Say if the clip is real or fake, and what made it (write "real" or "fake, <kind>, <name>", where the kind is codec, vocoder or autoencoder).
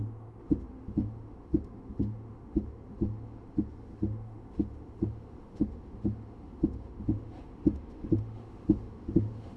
fake, autoencoder, DAC-VAE